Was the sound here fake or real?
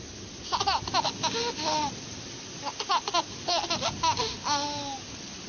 real